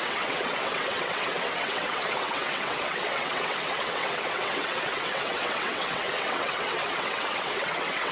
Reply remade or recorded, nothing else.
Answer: remade